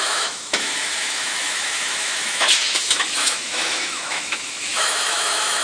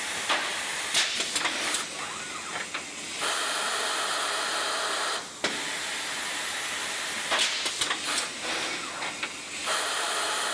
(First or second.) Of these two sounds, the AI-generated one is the first